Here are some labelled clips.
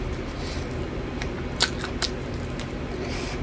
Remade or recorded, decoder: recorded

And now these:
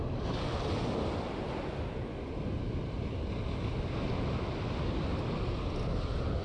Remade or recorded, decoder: recorded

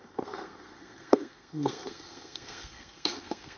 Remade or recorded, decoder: remade, codec, SNAC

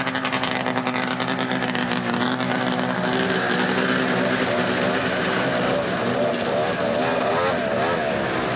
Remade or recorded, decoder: recorded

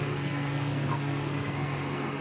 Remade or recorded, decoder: remade, codec, SNAC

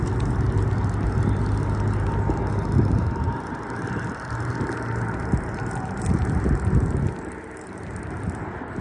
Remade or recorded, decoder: recorded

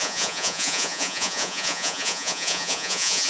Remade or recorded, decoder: remade, vocoder, Vocos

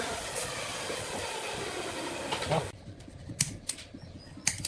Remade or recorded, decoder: recorded